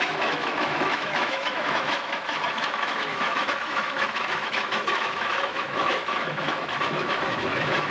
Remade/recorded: remade